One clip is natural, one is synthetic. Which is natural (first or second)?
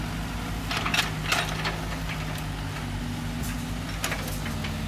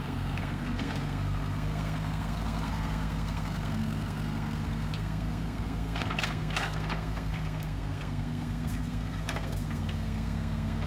first